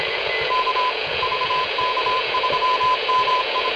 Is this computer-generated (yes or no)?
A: yes